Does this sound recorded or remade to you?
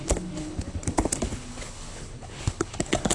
remade